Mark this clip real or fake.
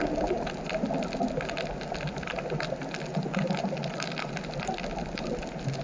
real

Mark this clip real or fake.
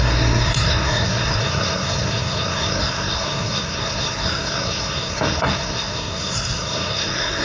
fake